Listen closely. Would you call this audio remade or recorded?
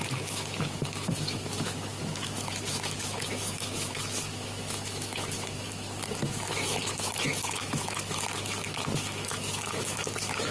remade